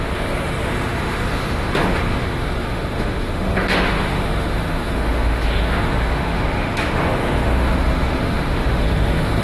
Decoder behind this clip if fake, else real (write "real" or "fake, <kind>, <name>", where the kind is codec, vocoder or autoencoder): fake, autoencoder, DAC-VAE